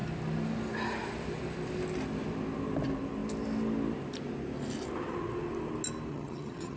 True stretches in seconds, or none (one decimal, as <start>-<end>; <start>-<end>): 0.0-6.1